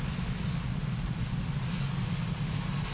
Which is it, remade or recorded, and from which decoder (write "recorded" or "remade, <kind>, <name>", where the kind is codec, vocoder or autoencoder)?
recorded